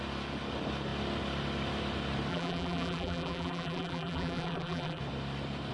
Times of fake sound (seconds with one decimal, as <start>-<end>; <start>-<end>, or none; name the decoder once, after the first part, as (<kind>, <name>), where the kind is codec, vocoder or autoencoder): 2.3-5.0 (vocoder, BigVGAN v2)